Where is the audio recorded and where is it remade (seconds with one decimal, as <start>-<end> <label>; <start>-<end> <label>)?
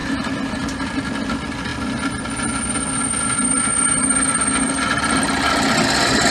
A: 0.0-6.3 recorded